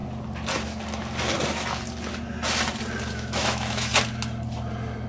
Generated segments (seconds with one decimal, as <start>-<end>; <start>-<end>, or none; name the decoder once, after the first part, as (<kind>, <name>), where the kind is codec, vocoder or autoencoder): 3.1-3.9 (autoencoder, DAC-VAE)